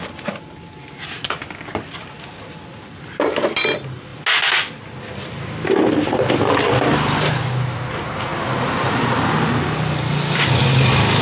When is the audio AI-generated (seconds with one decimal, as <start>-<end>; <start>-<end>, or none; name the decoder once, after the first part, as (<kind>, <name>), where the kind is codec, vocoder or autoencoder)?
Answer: none

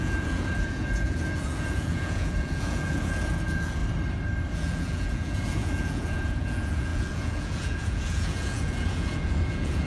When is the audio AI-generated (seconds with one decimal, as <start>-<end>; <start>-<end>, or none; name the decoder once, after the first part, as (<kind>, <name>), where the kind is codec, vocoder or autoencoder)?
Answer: 0.0-3.8 (vocoder, Vocos); 4.5-9.9

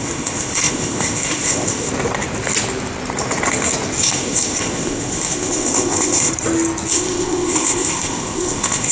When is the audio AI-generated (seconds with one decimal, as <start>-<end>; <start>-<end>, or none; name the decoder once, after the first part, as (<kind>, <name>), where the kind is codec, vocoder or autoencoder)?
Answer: 0.0-1.9 (codec, ZipCodec); 4.0-6.3; 6.9-8.9

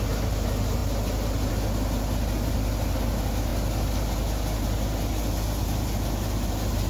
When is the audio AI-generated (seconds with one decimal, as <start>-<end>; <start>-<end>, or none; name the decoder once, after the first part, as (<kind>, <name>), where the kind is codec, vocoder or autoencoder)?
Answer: none

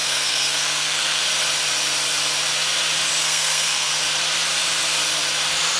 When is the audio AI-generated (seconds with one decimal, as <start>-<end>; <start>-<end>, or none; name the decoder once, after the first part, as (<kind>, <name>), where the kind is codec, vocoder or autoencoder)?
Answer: 0.0-1.2 (codec, SNAC); 3.2-3.9

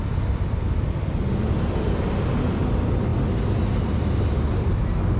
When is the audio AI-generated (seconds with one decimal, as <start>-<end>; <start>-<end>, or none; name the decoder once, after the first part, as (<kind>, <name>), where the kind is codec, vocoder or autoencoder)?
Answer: none

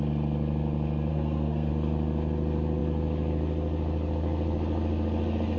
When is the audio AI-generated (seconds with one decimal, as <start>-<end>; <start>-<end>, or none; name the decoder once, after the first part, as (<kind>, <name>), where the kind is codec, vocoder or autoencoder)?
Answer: 1.1-1.7 (codec, SNAC)